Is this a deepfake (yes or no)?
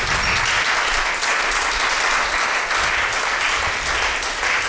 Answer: no